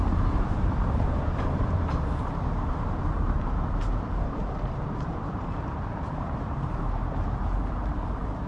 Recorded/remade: remade